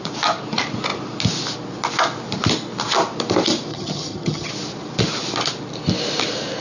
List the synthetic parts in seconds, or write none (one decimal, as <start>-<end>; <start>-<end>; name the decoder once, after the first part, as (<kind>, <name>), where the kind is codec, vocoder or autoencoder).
3.7-4.5 (vocoder, HiFi-GAN)